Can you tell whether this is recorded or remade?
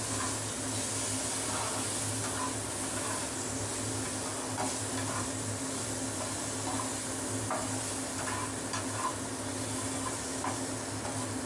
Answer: recorded